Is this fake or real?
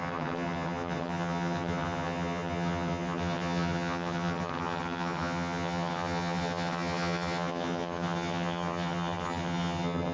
fake